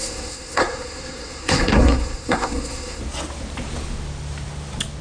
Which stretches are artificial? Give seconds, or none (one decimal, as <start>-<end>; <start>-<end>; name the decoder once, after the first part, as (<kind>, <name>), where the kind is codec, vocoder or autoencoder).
0.0-3.0 (codec, SNAC)